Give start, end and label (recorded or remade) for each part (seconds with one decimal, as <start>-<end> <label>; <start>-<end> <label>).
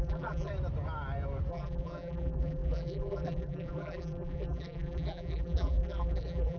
0.0-0.5 remade; 0.5-1.5 recorded; 1.5-6.6 remade